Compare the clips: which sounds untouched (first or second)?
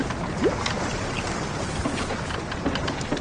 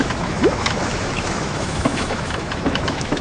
first